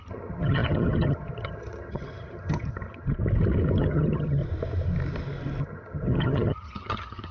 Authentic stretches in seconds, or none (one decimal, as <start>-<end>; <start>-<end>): 3.1-3.8; 4.4-5.6